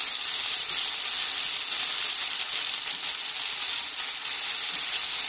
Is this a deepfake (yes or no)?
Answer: no